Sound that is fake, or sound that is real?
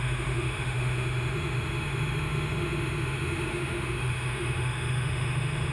fake